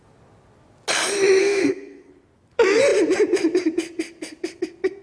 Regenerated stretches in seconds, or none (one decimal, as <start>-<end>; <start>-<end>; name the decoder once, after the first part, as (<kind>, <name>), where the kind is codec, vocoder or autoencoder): 1.4-2.1 (codec, SNAC)